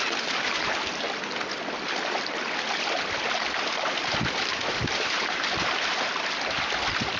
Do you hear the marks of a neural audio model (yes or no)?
no